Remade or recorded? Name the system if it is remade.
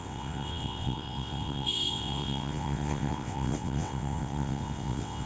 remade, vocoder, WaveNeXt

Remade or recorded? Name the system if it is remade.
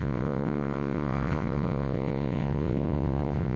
remade, vocoder, WaveNeXt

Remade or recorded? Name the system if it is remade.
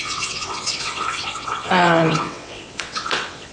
remade, vocoder, WaveNeXt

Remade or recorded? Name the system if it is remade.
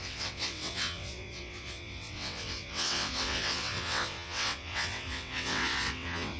remade, vocoder, WaveNeXt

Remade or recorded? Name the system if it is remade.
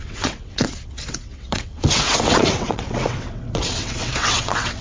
remade, vocoder, WaveNeXt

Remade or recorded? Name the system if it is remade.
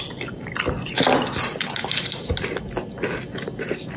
recorded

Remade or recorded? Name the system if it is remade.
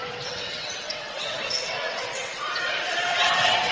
remade, vocoder, WaveNeXt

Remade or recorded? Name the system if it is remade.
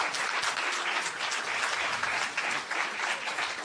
recorded